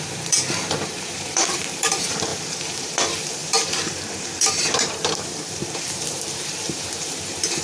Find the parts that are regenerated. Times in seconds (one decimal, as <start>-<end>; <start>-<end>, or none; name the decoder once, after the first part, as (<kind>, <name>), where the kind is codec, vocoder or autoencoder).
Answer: 0.0-7.6 (vocoder, BigVGAN v2)